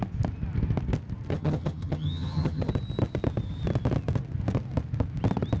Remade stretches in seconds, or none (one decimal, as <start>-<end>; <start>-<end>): 1.3-2.7